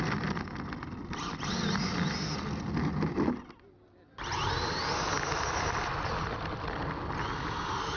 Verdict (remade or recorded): recorded